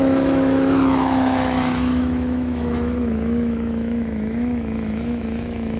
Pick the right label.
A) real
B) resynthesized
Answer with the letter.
B